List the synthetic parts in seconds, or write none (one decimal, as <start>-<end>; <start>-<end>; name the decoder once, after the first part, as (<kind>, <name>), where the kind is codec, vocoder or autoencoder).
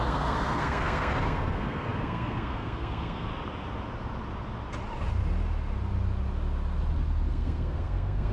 0.0-3.3 (codec, SNAC); 7.3-8.3